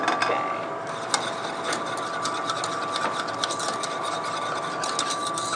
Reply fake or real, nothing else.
real